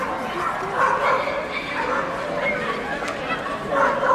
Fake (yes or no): no